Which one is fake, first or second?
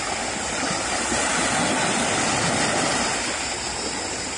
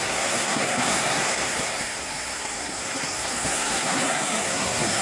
second